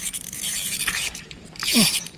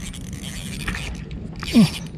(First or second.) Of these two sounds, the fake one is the first